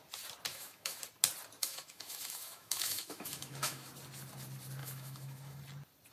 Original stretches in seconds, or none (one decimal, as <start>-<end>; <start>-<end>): 0.0-0.5; 1.0-1.6; 3.9-4.8; 5.6-6.1